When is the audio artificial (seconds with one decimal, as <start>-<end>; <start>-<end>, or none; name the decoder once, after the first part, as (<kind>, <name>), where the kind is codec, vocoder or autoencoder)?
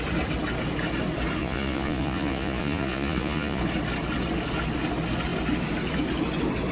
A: 1.4-3.6 (vocoder, Vocos)